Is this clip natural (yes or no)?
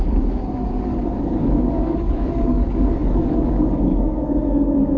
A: no